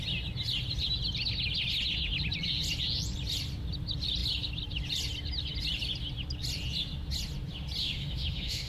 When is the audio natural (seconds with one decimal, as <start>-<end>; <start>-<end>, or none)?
0.0-7.8